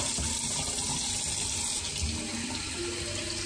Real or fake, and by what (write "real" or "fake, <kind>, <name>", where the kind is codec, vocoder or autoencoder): real